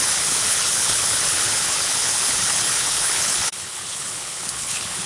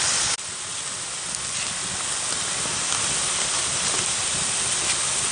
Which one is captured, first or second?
second